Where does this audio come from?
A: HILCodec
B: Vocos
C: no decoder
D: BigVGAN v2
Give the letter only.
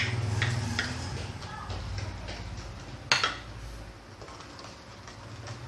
C